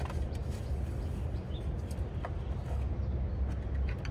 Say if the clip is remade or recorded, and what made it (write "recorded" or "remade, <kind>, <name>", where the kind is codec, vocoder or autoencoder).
recorded